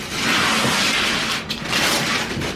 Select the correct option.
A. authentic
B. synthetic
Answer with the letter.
A